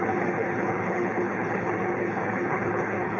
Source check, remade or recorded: remade